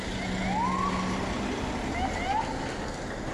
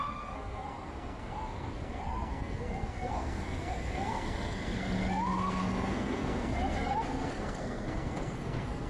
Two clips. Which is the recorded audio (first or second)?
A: first